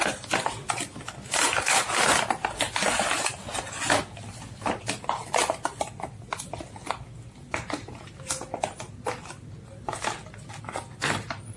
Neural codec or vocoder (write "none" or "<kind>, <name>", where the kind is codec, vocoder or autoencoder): none